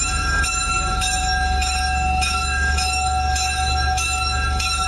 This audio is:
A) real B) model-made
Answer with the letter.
B